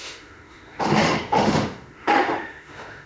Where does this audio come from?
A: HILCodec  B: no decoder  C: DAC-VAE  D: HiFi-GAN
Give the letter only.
C